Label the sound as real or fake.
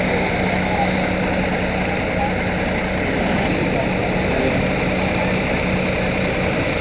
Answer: real